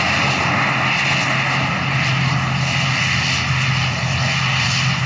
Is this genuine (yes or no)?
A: yes